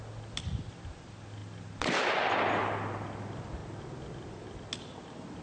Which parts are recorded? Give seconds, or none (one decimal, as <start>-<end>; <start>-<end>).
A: 0.0-5.4